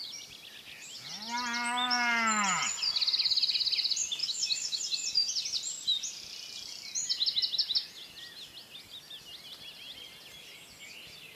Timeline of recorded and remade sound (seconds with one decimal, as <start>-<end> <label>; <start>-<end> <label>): 0.0-4.2 recorded; 4.2-4.8 remade; 4.8-11.3 recorded